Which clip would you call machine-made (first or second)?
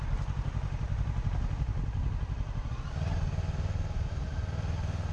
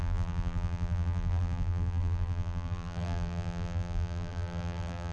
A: second